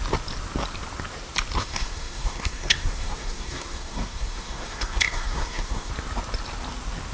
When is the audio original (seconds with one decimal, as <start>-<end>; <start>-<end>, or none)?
0.0-1.6; 5.9-7.1